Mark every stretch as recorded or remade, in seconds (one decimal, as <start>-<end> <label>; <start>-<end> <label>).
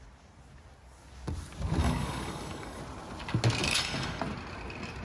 0.0-1.8 recorded; 1.8-2.8 remade; 2.8-3.6 recorded; 3.6-4.2 remade; 4.2-5.0 recorded